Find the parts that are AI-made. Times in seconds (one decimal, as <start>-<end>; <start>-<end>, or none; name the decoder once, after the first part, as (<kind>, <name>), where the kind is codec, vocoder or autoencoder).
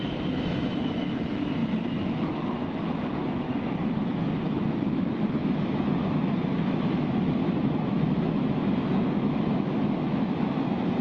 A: 0.0-7.4 (autoencoder, DAC-VAE); 7.9-11.0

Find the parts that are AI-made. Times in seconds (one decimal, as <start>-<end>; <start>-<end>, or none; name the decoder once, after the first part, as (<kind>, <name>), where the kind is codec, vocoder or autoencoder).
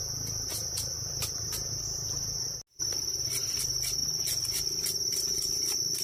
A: none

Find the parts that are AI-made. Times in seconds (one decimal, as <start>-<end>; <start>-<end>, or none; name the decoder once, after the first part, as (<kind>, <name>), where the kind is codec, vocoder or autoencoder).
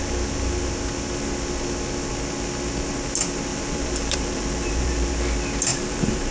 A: 3.5-5.1 (vocoder, BigVGAN v2); 5.7-6.3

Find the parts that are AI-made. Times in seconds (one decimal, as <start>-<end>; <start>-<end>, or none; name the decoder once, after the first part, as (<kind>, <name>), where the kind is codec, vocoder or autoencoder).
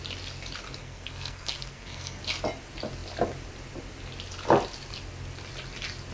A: 0.8-2.2 (codec, SNAC)